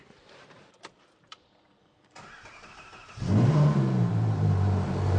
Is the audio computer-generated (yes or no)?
yes